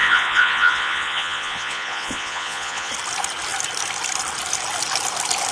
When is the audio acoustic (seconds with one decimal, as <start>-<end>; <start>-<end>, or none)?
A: 2.9-5.5